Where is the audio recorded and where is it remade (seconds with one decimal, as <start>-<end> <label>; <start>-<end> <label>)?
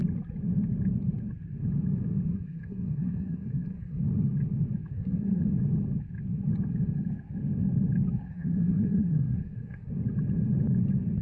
0.0-2.3 recorded; 2.3-4.0 remade; 4.0-4.9 recorded; 4.9-5.4 remade; 5.4-8.3 recorded; 8.3-9.9 remade; 9.9-11.2 recorded